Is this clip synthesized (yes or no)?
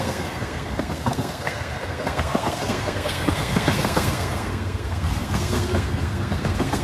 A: yes